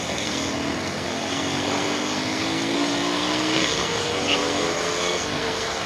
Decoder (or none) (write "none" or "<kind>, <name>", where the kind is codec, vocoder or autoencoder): codec, SNAC